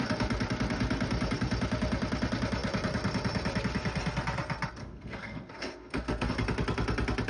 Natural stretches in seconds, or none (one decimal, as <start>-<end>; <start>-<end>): 0.0-4.8; 6.3-7.3